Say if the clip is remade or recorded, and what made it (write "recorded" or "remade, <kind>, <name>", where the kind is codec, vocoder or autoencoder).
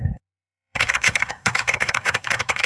remade, codec, SNAC